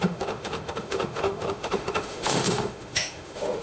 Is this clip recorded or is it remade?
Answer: remade